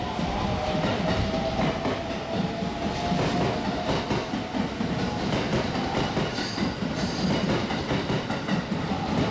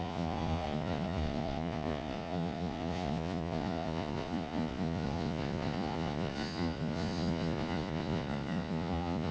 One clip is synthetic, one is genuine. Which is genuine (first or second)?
first